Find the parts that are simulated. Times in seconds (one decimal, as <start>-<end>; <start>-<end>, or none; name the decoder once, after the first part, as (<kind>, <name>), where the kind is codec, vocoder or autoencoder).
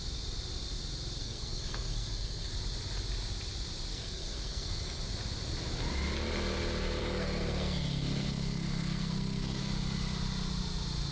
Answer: 1.2-2.5 (codec, SNAC); 3.9-5.0; 7.0-9.6